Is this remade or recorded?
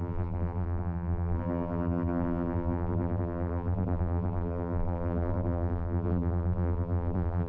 remade